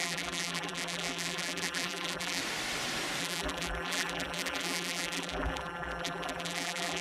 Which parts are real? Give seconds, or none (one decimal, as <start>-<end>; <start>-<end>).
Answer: 2.4-3.2